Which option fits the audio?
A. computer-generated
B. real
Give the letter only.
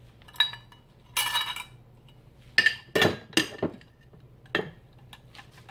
B